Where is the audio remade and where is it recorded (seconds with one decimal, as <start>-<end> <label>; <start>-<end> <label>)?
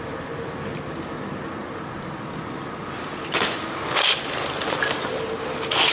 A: 0.0-5.9 recorded